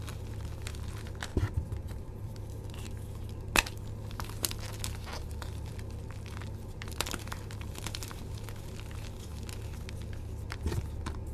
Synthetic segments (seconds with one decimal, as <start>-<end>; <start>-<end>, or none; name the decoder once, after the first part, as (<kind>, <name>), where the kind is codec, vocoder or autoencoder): 1.3-2.4 (vocoder, BigVGAN v2)

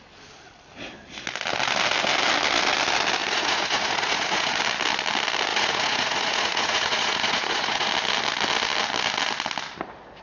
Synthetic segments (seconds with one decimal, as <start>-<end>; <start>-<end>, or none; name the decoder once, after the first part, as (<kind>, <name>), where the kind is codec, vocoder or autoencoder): 3.2-4.6 (vocoder, Vocos); 5.5-7.9

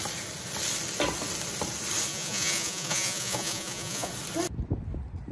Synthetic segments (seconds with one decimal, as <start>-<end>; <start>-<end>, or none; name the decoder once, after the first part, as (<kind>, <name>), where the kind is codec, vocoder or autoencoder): 2.1-4.1 (vocoder, Vocos)

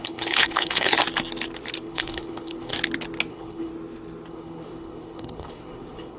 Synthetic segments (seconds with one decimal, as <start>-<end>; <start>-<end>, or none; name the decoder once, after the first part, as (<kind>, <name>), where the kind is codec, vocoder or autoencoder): 0.0-0.9 (codec, HILCodec); 1.8-2.7; 3.3-3.7; 4.3-6.2

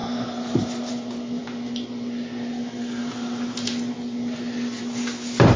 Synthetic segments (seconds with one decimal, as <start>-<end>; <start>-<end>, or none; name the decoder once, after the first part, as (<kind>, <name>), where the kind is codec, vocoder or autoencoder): none